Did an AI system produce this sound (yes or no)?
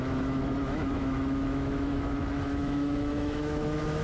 yes